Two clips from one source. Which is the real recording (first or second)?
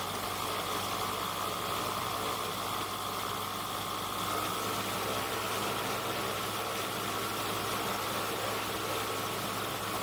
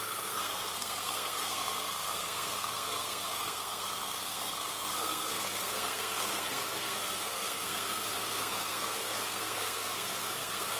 first